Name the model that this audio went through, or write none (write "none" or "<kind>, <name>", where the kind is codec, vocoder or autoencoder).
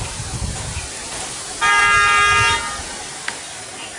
none